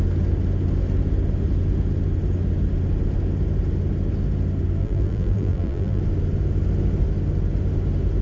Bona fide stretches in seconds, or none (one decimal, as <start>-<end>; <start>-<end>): 0.0-4.8; 6.0-8.2